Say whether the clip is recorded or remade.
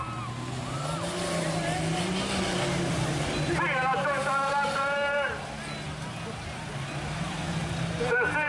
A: recorded